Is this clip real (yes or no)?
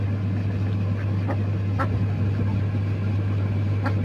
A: yes